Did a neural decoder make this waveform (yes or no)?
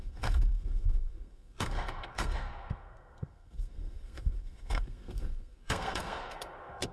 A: yes